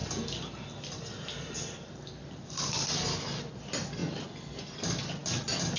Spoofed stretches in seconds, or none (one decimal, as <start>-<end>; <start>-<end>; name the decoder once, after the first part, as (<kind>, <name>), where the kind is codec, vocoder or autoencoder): 0.0-3.4 (vocoder, BigVGAN v2)